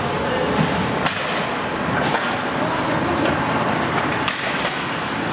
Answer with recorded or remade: recorded